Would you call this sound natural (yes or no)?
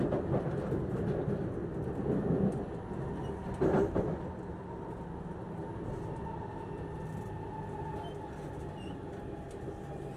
yes